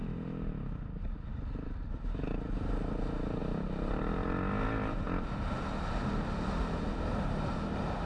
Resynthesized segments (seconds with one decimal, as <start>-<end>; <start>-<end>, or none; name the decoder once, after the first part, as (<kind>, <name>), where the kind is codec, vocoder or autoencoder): none